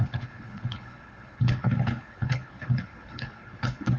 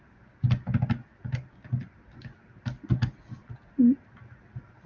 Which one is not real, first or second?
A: first